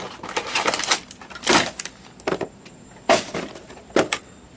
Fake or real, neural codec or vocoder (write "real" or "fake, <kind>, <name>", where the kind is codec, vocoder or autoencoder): real